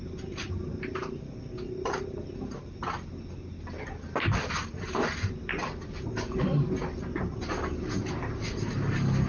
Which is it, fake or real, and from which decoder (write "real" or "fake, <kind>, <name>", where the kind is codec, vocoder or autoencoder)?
real